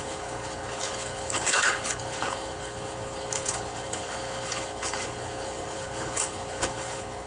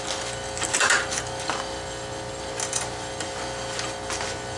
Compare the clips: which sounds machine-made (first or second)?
first